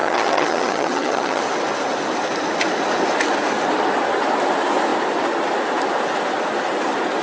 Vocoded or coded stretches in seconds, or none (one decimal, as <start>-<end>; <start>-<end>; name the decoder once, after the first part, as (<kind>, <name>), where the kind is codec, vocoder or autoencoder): 0.0-1.4 (vocoder, HiFi-GAN)